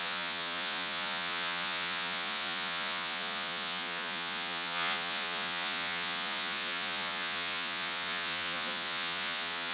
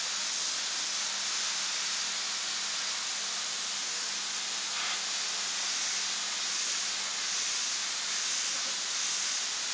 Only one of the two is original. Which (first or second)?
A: second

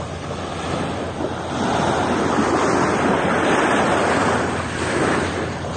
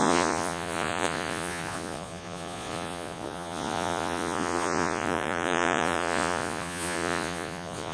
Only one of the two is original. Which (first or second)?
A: first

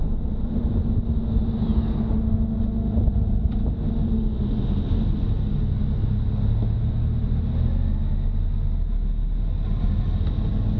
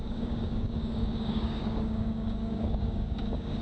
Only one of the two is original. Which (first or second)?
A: first